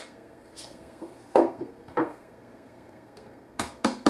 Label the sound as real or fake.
fake